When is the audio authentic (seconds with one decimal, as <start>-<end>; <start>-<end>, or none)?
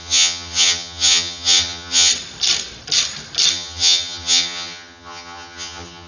2.1-3.5